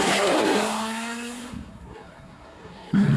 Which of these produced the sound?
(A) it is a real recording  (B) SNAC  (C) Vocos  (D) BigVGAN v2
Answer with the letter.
B